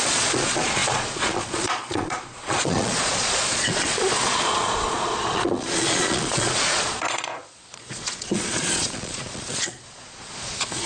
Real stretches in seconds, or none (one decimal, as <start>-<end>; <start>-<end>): none